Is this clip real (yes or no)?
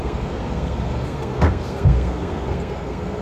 no